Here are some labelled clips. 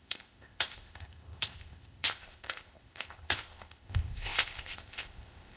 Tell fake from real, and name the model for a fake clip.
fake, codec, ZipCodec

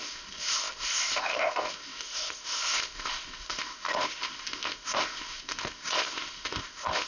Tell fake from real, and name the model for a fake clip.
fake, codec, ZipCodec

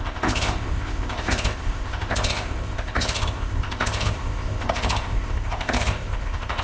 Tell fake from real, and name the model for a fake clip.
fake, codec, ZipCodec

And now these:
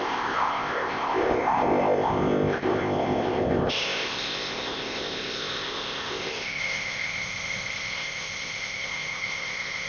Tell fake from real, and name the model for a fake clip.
fake, codec, ZipCodec